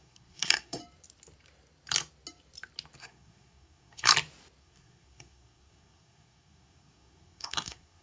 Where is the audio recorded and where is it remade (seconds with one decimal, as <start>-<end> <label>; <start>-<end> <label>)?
0.0-0.8 remade; 0.8-3.0 recorded; 3.0-4.1 remade; 4.1-4.6 recorded; 4.6-8.0 remade

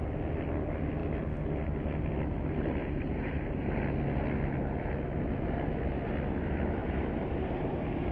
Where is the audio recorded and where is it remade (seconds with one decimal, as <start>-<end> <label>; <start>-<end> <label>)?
0.0-2.8 recorded; 2.8-3.8 remade; 3.8-6.8 recorded; 6.8-8.1 remade